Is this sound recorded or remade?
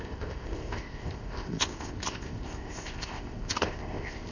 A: remade